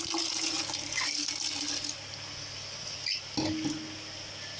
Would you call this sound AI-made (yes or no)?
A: no